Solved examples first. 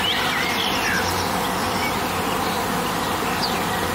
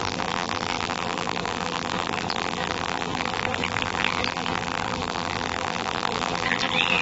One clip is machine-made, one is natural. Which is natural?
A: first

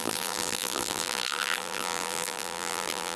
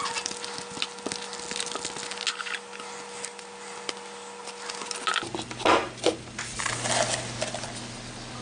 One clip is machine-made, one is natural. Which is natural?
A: second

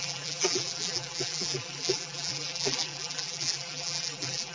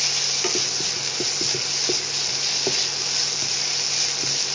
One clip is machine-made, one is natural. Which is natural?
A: second